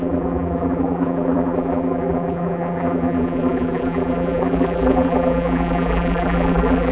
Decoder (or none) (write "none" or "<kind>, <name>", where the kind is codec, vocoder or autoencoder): vocoder, BigVGAN v2